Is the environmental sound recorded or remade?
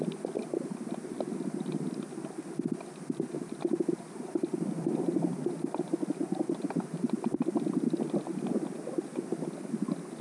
recorded